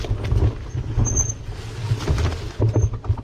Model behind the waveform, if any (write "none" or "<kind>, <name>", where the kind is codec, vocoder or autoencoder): none